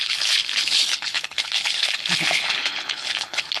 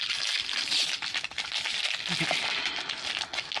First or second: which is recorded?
second